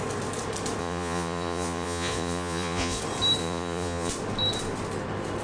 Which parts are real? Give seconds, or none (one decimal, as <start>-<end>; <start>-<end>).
0.0-0.8; 3.0-3.4; 4.1-5.4